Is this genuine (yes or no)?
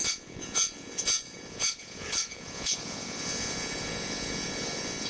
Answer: no